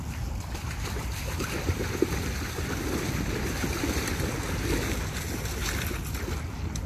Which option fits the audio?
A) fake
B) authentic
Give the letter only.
B